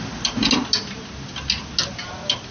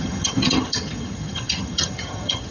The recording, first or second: first